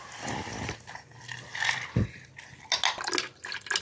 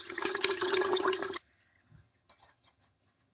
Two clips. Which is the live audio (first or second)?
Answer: first